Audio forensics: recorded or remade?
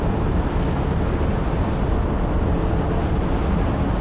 recorded